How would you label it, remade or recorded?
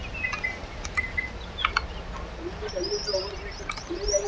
recorded